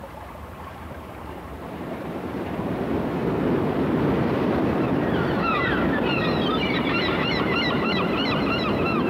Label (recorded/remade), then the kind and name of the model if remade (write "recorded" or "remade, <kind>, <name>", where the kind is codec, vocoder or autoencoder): remade, vocoder, BigVGAN v2